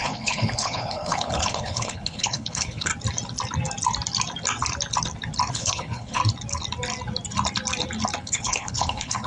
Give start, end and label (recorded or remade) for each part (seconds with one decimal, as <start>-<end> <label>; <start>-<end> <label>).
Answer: 0.0-2.9 remade; 2.9-5.5 recorded; 5.5-6.2 remade; 6.2-8.2 recorded; 8.2-9.3 remade